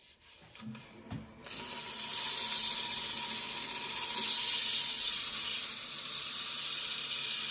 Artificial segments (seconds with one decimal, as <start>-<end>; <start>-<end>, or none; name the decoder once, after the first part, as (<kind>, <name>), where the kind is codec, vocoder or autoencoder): none